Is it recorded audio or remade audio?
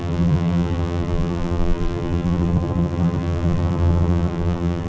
remade